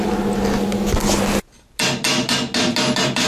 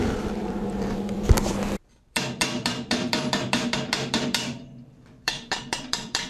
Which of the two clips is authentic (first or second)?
first